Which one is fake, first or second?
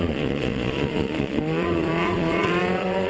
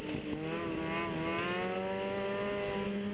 first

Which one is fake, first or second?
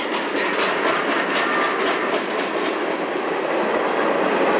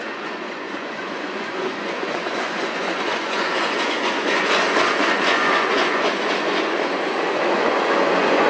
second